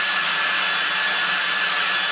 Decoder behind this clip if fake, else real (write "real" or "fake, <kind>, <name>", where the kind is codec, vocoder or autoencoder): real